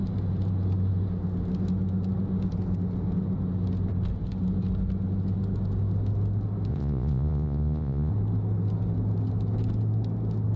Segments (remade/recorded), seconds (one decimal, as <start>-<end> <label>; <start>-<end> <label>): 0.0-6.7 recorded; 6.7-8.1 remade; 8.1-10.6 recorded